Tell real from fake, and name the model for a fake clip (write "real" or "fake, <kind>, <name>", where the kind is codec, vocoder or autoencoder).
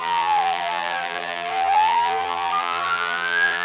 fake, vocoder, BigVGAN v2